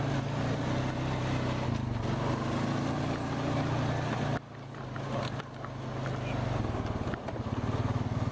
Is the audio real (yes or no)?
yes